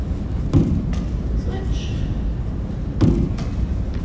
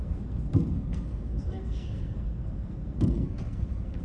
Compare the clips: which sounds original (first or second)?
first